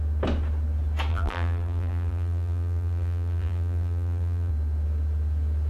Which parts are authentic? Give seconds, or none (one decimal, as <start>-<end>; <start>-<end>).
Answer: 0.0-1.1; 4.5-5.7